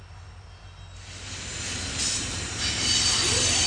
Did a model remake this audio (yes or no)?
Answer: no